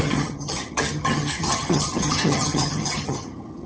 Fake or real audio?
fake